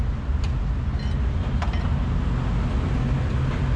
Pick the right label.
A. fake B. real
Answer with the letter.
B